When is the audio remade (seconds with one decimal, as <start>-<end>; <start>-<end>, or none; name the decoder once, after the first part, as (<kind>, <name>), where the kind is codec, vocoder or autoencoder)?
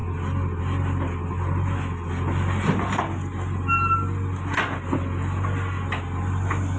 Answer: none